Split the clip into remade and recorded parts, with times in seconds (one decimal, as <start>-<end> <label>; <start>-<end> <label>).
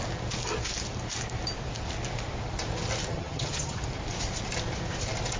0.0-3.1 recorded; 3.1-3.8 remade; 3.8-5.4 recorded